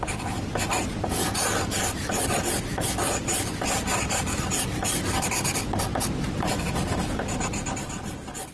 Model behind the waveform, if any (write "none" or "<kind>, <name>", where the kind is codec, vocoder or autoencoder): none